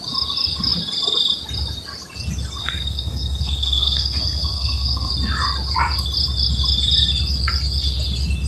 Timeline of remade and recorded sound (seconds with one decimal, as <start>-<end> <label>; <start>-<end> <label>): 0.0-2.6 recorded; 2.6-5.1 remade; 5.1-8.5 recorded